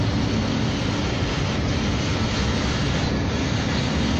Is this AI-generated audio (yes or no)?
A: no